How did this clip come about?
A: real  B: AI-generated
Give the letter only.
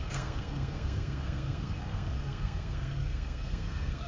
B